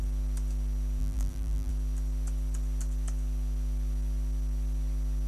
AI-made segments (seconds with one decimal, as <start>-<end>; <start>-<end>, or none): 1.0-1.7